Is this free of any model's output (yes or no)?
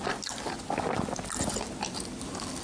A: yes